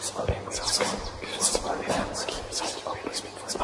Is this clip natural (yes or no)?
yes